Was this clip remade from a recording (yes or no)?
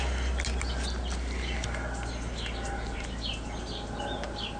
no